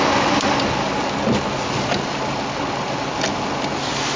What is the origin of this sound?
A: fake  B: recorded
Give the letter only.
B